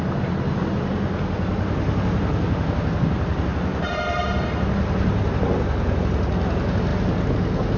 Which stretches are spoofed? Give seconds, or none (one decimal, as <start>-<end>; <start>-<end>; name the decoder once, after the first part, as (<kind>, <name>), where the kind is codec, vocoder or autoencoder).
3.7-5.4 (vocoder, BigVGAN v2)